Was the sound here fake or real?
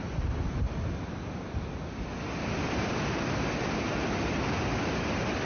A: real